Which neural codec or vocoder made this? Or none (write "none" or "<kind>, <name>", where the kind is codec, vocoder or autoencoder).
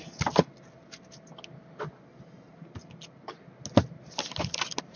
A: none